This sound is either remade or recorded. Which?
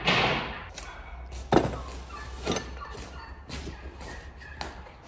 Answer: recorded